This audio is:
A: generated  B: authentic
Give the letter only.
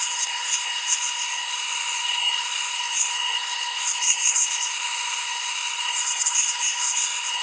A